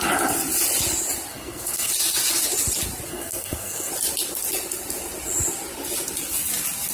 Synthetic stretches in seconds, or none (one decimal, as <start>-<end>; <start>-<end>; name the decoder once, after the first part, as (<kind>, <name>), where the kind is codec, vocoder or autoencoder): 1.3-1.9 (codec, SNAC); 3.1-3.9